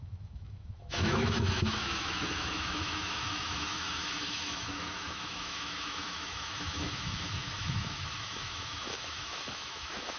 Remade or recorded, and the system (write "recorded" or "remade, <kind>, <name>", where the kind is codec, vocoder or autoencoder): remade, autoencoder, DAC-VAE